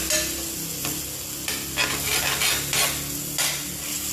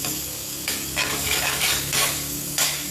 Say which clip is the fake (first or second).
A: second